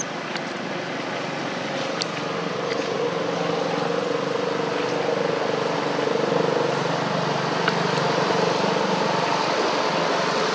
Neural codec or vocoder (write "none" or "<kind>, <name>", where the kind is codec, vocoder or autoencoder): none